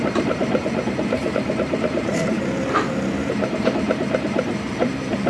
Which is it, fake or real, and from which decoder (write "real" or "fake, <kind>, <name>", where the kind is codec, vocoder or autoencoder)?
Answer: fake, vocoder, BigVGAN v2